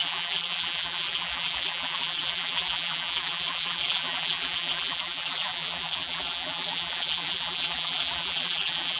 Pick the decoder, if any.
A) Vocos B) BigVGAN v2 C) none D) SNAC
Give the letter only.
B